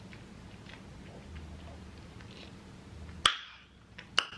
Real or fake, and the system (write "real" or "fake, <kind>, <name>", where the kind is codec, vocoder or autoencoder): real